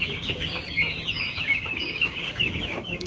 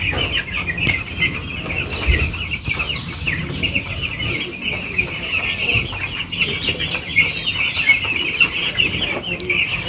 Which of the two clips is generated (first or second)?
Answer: first